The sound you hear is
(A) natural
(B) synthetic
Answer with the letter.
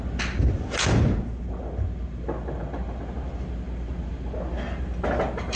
A